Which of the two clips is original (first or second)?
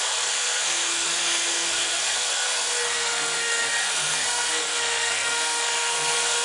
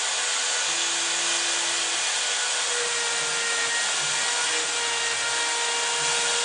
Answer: second